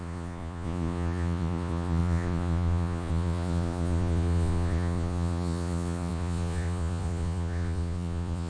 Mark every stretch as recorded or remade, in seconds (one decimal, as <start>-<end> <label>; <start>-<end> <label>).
0.0-8.5 remade